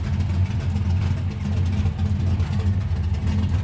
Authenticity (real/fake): real